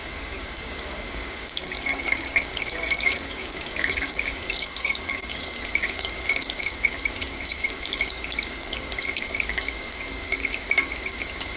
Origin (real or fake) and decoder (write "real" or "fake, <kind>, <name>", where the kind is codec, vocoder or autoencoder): fake, codec, DAC